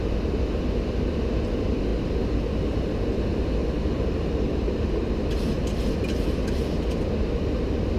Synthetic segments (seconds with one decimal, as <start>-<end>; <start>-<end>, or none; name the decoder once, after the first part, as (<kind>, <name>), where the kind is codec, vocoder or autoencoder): none

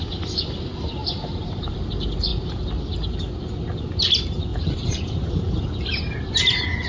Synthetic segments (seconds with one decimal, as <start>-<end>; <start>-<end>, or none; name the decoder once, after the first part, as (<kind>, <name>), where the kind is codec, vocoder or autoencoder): 1.0-1.9 (vocoder, BigVGAN v2); 4.5-5.6

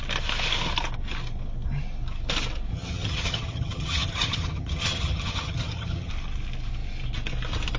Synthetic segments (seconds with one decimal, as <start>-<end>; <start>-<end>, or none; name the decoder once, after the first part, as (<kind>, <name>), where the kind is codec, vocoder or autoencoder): 2.7-6.1 (vocoder, HiFi-GAN)

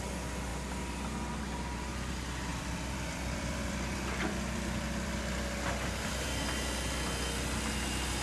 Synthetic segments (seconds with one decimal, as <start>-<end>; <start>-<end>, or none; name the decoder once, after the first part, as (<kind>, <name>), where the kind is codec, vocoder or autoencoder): 2.5-6.4 (vocoder, BigVGAN v2)

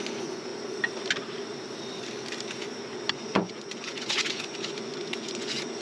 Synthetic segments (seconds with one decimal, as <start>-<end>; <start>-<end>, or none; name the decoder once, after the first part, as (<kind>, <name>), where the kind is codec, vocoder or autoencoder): 0.0-0.5 (vocoder, Vocos); 3.1-5.8

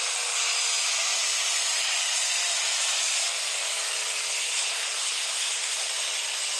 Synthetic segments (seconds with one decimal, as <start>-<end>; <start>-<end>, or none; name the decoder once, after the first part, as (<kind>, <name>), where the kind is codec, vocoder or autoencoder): 4.4-5.9 (codec, SNAC)

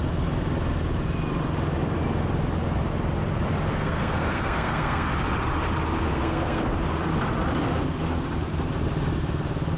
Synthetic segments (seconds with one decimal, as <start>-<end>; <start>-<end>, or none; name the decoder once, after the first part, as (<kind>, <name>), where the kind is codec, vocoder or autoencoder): 3.7-5.1 (codec, SNAC); 6.1-6.7